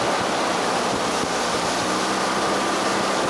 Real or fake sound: real